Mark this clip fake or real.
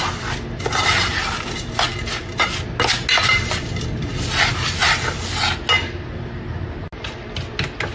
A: real